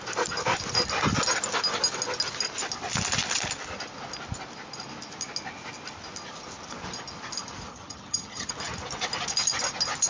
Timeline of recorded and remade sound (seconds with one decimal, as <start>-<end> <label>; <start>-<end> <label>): 0.0-7.7 recorded; 7.7-8.5 remade; 8.5-10.1 recorded